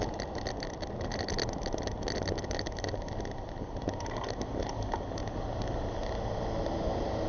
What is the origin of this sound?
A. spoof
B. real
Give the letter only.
B